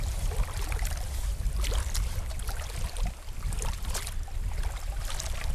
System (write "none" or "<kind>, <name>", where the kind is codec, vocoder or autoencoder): none